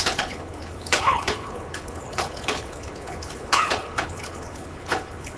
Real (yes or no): no